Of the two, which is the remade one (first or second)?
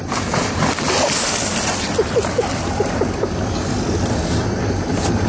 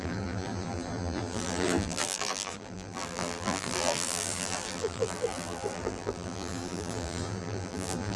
second